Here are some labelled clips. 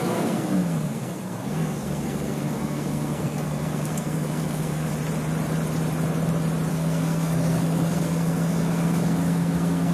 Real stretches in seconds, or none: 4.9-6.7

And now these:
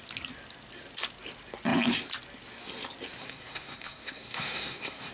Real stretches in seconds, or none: 0.0-3.2

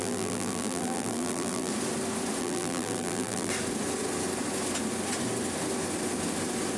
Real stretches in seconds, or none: 1.7-2.4; 3.5-6.8

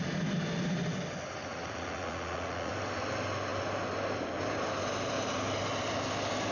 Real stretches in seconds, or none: 0.0-1.4; 2.7-6.5